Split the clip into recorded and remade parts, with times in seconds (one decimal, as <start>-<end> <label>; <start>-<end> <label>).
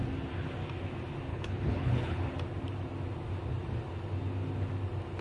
0.0-1.3 recorded; 1.3-2.3 remade; 2.3-5.2 recorded